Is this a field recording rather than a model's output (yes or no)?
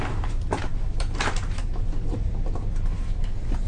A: yes